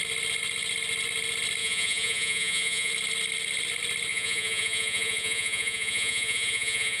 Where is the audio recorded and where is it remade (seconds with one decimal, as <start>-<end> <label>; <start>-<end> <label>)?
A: 0.0-1.6 recorded; 1.6-2.9 remade; 2.9-4.1 recorded; 4.1-7.0 remade